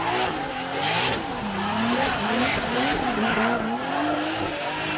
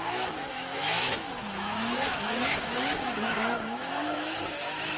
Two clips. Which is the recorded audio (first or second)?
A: first